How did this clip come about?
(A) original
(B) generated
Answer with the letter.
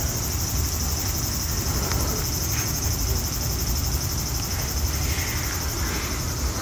A